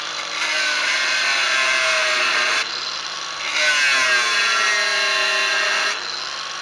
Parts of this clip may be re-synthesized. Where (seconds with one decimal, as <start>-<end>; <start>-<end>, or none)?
2.0-3.2; 4.9-5.5